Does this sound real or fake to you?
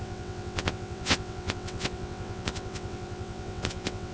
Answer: fake